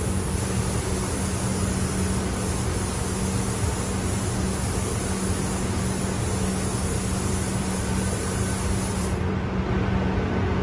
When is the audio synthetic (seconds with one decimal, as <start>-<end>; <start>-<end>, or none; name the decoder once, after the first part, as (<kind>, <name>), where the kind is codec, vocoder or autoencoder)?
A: 7.6-9.6 (vocoder, BigVGAN v2)